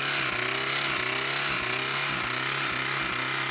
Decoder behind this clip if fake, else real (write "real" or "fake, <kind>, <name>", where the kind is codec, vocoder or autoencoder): real